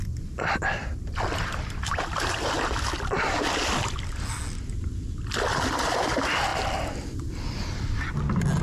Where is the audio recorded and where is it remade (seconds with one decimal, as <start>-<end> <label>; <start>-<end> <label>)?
0.0-8.6 recorded